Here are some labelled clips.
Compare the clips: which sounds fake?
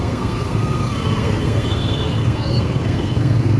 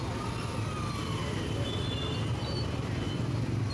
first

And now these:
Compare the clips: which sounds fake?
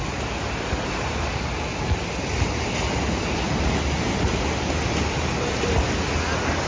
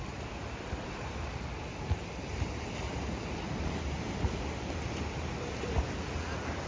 second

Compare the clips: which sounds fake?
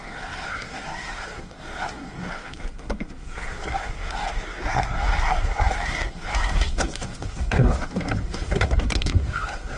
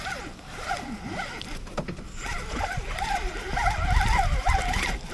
first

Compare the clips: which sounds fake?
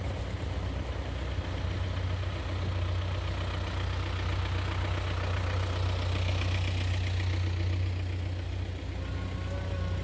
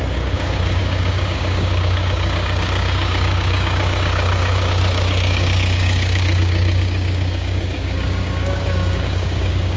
second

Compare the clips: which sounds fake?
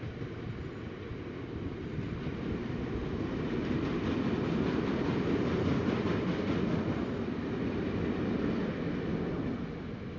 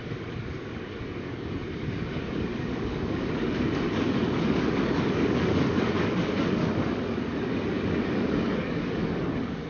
second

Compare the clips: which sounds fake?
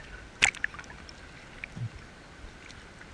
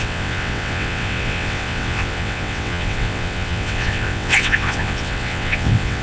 second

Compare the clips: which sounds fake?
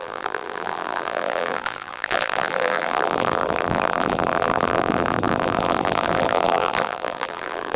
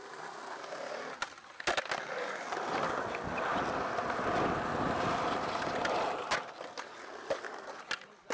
first